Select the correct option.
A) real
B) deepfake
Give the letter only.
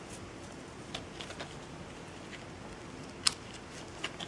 A